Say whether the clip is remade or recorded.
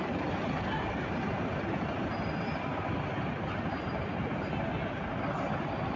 recorded